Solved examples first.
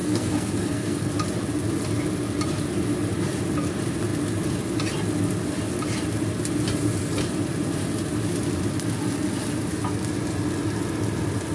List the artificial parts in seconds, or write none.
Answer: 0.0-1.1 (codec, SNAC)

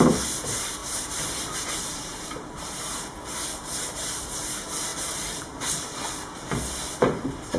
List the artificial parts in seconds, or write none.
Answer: 0.8-3.0 (vocoder, BigVGAN v2); 4.9-5.6

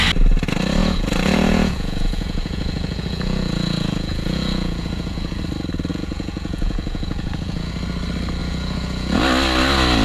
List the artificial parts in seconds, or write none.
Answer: 0.8-5.4 (vocoder, Vocos); 5.9-7.7; 8.4-9.2

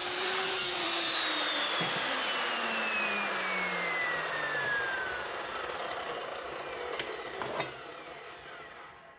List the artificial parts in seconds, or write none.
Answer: 0.0-2.4 (vocoder, BigVGAN v2)

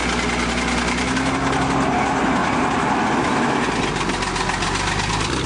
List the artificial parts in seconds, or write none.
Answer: none

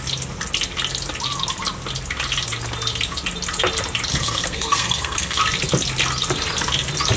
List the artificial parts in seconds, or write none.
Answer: 4.1-5.4 (codec, SNAC)

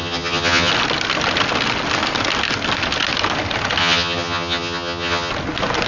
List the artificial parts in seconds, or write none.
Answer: 0.0-0.7 (vocoder, HiFi-GAN); 3.8-5.3

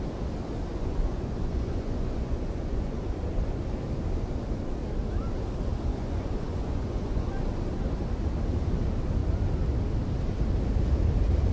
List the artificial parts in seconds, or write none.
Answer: 0.7-3.0 (vocoder, Vocos); 5.9-7.4